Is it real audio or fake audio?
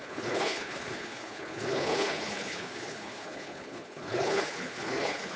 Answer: fake